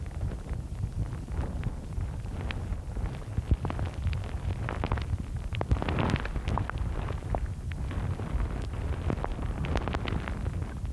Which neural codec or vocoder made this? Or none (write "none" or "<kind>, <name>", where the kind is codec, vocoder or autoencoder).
none